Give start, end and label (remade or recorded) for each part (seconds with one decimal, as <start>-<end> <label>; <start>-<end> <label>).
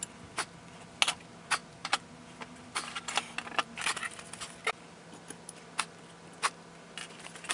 0.0-7.5 recorded